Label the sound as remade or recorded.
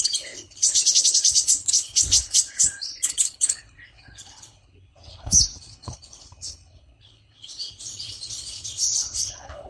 remade